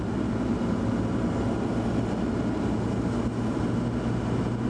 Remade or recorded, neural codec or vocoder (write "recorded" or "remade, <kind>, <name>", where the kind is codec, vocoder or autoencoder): recorded